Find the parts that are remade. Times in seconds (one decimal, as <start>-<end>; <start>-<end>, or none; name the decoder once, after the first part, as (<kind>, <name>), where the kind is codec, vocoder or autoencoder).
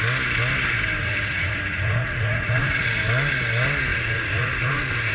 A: 1.0-2.8 (vocoder, Vocos); 3.9-5.1